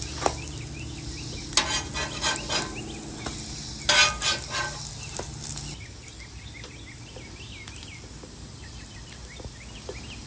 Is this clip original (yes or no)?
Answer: yes